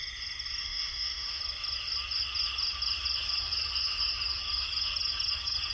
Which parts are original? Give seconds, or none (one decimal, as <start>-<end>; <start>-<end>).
0.0-0.6; 1.4-5.7